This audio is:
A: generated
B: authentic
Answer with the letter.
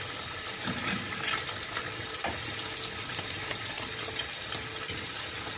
B